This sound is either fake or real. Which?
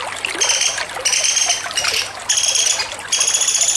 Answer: real